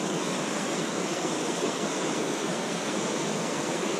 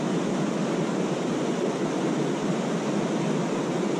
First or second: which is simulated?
first